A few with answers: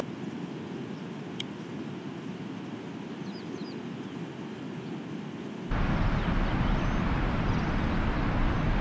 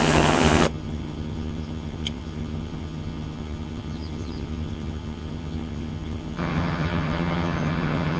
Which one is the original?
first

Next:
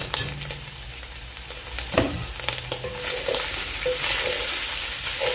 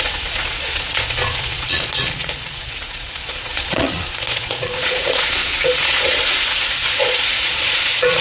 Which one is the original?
first